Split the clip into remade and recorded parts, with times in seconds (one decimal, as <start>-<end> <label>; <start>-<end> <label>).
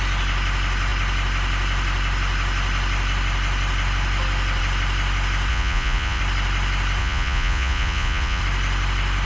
0.0-5.5 recorded; 5.5-6.2 remade; 6.2-7.0 recorded; 7.0-8.4 remade; 8.4-9.3 recorded